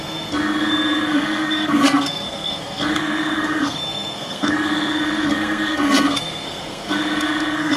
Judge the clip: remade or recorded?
remade